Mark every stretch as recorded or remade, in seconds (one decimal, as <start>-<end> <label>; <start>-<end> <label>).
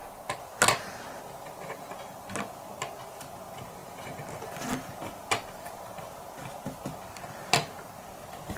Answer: 0.0-8.6 recorded